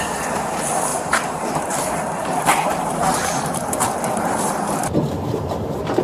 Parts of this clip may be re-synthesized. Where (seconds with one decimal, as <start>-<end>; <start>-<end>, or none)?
0.9-4.5